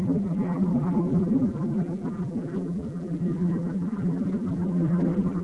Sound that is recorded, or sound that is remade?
remade